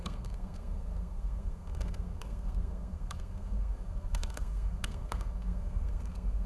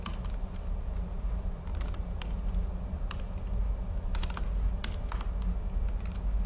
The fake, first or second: first